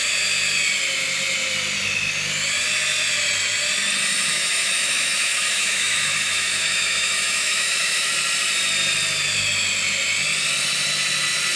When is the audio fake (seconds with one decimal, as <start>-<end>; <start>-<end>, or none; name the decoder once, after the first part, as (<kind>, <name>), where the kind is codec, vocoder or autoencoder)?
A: 4.3-8.1 (autoencoder, DAC-VAE)